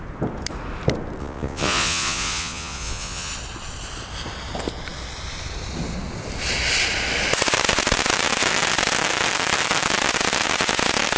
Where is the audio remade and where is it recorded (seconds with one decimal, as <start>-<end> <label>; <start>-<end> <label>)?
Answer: 0.0-1.2 recorded; 1.2-3.3 remade; 3.3-11.2 recorded